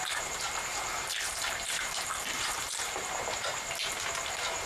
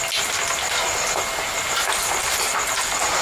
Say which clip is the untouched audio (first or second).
second